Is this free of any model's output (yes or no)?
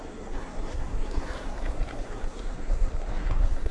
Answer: no